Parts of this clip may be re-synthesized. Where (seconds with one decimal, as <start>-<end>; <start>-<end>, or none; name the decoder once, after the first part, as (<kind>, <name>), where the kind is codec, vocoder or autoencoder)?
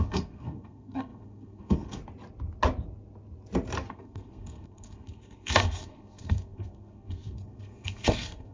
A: 0.0-2.0 (codec, SNAC); 3.9-8.5